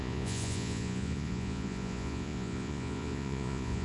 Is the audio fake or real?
fake